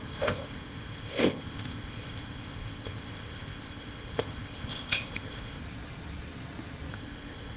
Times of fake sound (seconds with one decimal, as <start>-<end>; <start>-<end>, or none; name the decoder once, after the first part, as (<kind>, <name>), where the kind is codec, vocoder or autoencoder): 0.0-5.6 (codec, ZipCodec); 6.9-7.6

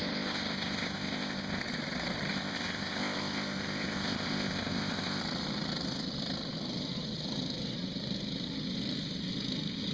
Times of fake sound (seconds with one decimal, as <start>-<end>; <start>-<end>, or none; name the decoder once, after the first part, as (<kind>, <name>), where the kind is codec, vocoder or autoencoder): 0.0-1.6 (codec, ZipCodec); 2.3-5.2

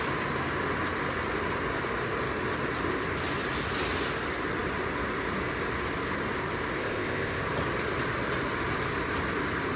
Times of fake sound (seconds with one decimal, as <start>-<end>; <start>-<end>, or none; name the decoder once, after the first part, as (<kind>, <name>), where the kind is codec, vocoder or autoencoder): 6.8-7.4 (codec, ZipCodec)

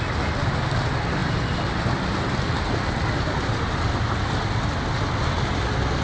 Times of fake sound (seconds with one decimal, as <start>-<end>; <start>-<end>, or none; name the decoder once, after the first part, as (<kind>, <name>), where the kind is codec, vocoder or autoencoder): none